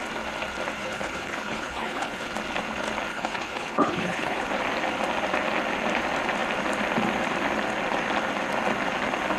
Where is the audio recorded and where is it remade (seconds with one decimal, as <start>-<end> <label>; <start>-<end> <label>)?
0.0-0.8 recorded; 0.8-2.3 remade; 2.3-3.1 recorded; 3.1-4.5 remade; 4.5-9.4 recorded